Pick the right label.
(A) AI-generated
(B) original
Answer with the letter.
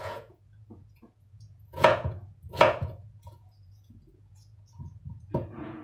A